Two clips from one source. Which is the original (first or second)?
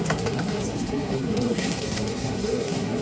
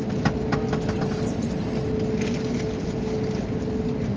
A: second